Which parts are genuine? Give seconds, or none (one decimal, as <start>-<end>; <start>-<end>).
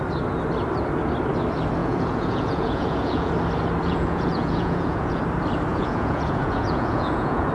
0.0-1.8; 3.3-3.8; 5.2-5.7